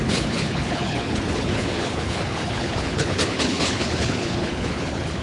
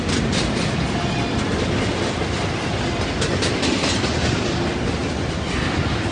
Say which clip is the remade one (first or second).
first